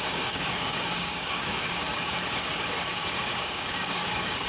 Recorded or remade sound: remade